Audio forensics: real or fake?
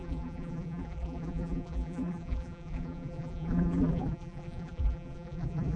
fake